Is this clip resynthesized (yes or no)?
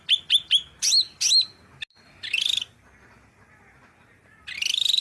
no